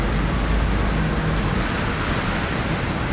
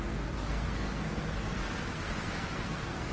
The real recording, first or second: first